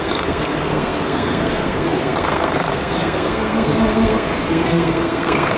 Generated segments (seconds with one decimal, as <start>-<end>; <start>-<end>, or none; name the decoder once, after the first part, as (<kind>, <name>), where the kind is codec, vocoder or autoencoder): 0.0-5.6 (codec, SNAC)